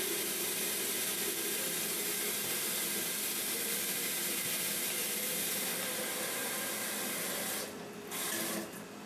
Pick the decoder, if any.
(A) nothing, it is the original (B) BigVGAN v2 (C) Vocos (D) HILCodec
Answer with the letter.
A